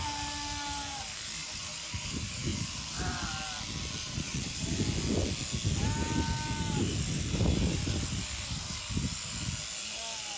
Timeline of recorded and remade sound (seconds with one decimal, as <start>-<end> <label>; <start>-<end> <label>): 0.0-4.0 recorded; 4.0-4.7 remade; 4.7-10.4 recorded